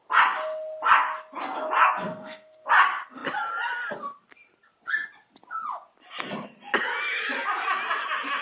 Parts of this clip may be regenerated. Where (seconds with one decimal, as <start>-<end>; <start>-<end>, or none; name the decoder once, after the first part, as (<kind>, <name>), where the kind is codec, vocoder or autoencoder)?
1.8-2.7 (codec, SNAC)